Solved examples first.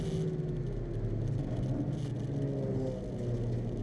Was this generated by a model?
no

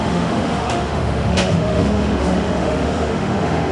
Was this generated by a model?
yes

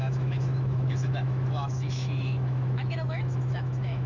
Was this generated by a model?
yes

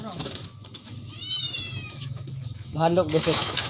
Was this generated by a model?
yes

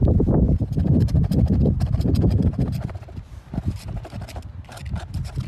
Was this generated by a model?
no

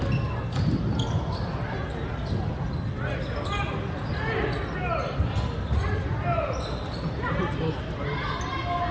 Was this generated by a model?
no